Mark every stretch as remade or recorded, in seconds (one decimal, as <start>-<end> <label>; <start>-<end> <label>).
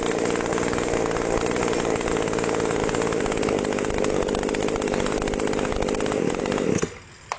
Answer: 0.0-7.4 recorded